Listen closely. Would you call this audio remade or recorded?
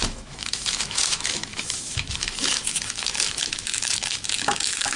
remade